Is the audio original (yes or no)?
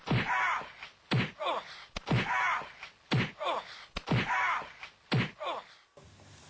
yes